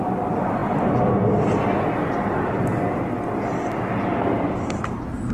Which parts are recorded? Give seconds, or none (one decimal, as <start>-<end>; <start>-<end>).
0.0-5.3